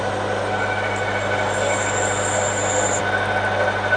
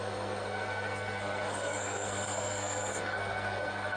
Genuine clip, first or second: first